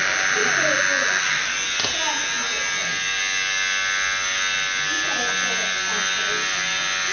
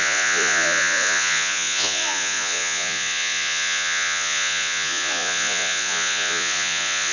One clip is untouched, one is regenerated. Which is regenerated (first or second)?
second